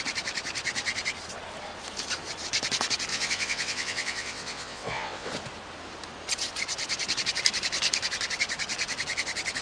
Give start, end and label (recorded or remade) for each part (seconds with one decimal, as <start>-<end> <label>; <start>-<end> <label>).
0.0-3.1 recorded; 3.1-5.3 remade; 5.3-9.6 recorded